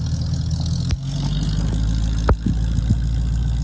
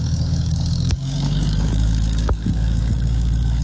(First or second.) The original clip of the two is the first